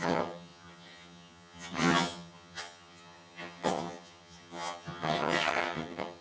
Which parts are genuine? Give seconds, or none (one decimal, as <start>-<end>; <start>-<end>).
none